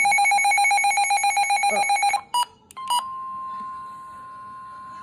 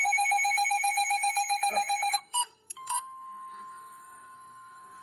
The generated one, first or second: second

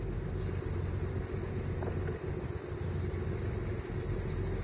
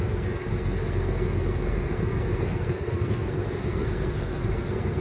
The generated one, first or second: second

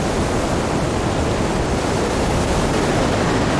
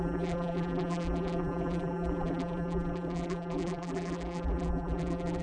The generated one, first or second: second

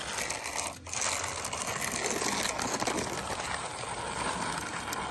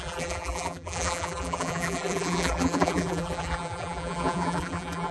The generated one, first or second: second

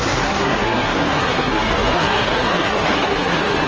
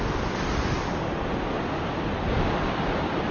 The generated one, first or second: first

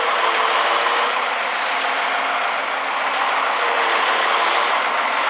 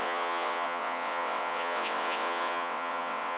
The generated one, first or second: second